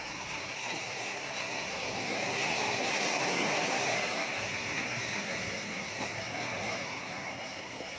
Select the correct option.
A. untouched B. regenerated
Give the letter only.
B